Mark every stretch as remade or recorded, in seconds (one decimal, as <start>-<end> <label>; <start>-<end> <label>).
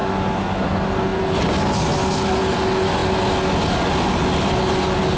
0.0-5.2 recorded